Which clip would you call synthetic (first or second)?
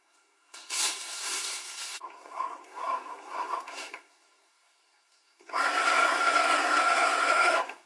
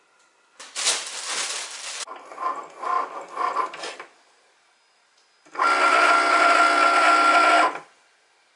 first